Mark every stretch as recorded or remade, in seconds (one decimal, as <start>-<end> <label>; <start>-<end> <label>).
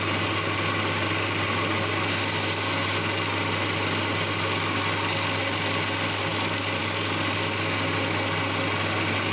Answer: 0.0-9.3 recorded